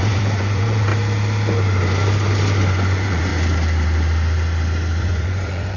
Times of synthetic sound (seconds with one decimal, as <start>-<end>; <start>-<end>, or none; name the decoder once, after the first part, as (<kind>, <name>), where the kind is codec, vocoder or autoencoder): 0.0-0.9 (vocoder, Vocos); 2.8-3.3; 5.0-5.8